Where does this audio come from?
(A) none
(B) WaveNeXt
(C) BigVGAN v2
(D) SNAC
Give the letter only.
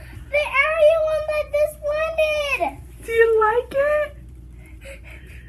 C